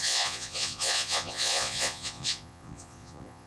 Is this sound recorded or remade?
remade